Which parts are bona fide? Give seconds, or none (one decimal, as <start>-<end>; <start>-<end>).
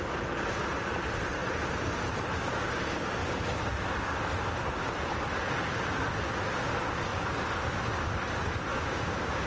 0.0-8.7